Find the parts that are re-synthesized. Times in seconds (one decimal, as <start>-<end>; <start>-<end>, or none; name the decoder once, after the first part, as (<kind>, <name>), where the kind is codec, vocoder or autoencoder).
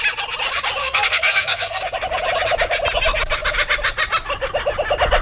0.8-1.8 (codec, SNAC)